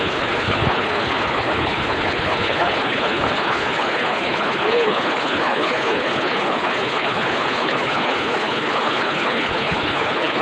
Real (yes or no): no